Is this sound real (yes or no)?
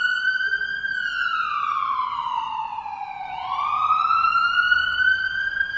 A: no